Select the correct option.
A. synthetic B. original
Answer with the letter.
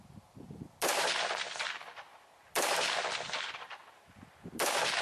B